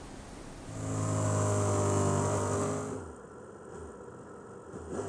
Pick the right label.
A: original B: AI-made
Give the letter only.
A